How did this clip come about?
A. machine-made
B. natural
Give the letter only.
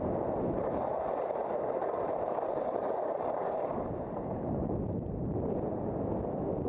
B